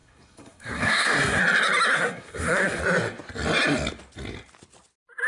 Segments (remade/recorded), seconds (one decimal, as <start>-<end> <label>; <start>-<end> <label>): 0.0-1.4 remade; 1.4-1.9 recorded; 1.9-2.8 remade; 2.8-5.3 recorded